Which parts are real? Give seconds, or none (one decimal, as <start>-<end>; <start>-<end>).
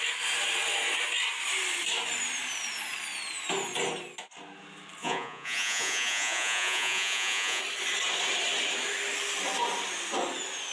0.0-5.0; 7.6-10.7